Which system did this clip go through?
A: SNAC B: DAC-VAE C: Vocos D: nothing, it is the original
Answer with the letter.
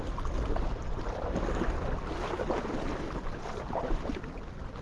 D